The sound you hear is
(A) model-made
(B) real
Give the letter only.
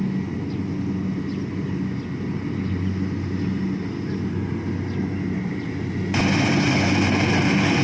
B